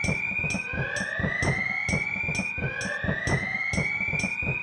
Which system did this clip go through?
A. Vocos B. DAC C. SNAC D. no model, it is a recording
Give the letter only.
D